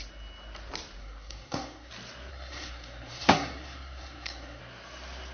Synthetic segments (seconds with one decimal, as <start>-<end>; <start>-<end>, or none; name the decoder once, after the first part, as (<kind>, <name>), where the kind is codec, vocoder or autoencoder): 1.0-1.9 (codec, SNAC); 2.3-4.6